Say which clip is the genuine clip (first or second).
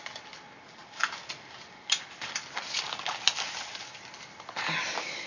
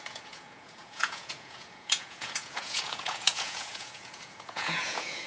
first